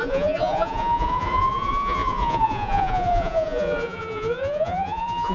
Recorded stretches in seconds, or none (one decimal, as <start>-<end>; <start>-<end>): none